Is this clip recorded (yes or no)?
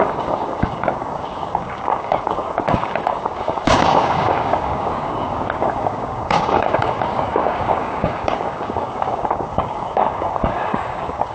no